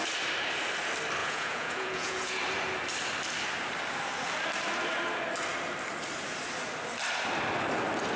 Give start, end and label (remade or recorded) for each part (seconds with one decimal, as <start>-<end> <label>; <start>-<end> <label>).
0.0-1.2 recorded; 1.2-2.4 remade; 2.4-8.2 recorded